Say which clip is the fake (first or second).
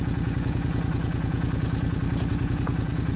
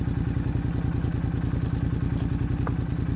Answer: first